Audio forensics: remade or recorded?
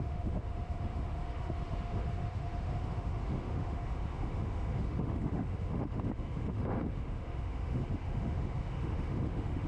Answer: remade